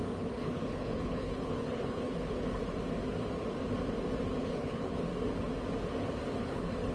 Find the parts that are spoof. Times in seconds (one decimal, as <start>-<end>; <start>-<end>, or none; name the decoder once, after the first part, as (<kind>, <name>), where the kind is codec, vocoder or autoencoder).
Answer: 0.0-2.6 (codec, HILCodec); 4.4-5.1; 6.4-6.9